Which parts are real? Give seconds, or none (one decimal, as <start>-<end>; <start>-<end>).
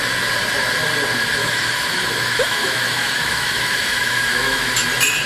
0.0-1.4; 4.6-5.3